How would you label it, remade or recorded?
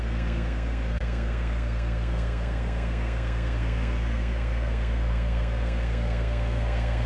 remade